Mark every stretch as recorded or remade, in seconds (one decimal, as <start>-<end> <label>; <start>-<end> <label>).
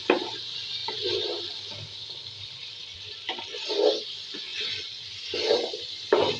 0.0-0.8 recorded; 0.8-1.5 remade; 1.5-2.8 recorded; 2.8-3.9 remade; 3.9-6.4 recorded